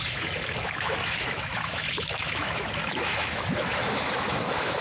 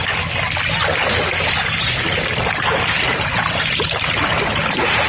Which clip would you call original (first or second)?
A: second